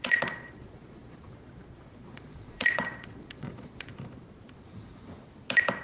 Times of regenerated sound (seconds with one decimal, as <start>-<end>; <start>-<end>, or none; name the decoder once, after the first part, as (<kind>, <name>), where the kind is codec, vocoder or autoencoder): 0.0-3.9 (vocoder, Vocos)